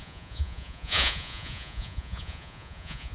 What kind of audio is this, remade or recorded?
remade